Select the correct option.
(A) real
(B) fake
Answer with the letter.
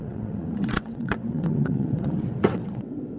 B